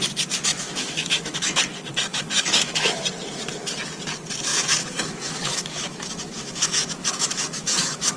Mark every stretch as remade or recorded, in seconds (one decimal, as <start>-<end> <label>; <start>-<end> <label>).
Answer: 0.0-0.5 recorded; 0.5-1.6 remade; 1.6-2.1 recorded; 2.1-3.0 remade; 3.0-4.5 recorded; 4.5-8.2 remade